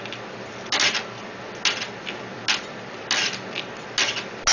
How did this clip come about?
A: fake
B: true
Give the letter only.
B